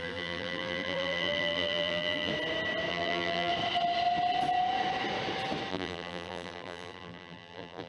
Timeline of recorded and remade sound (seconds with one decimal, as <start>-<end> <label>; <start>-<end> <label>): 0.0-2.3 remade; 2.3-2.9 recorded; 2.9-3.5 remade; 3.5-5.7 recorded; 5.7-7.9 remade